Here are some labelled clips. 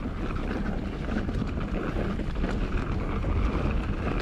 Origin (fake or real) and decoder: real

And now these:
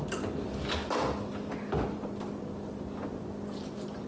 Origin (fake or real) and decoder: real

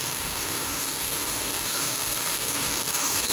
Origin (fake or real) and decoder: fake, codec, DAC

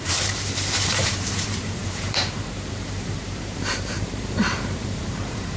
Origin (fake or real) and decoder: fake, vocoder, BigVGAN v2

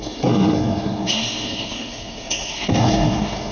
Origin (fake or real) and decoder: fake, codec, SNAC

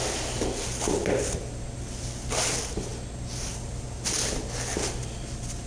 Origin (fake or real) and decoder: real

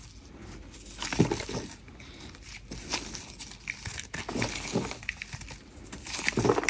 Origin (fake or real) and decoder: real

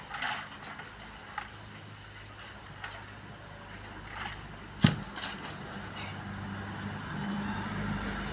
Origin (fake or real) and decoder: real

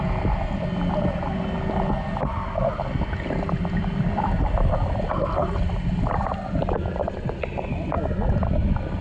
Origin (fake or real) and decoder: real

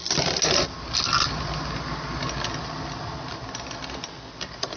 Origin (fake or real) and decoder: real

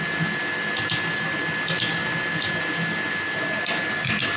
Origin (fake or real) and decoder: real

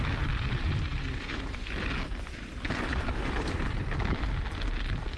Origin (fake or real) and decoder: fake, vocoder, BigVGAN v2